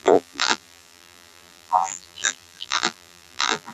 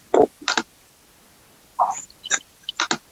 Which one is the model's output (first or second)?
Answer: first